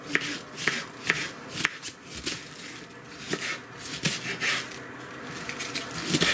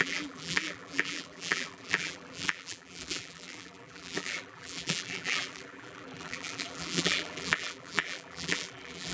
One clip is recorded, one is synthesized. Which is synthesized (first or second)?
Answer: second